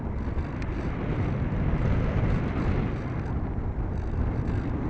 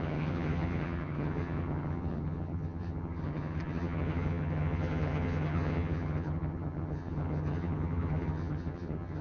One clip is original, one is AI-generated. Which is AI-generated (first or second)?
second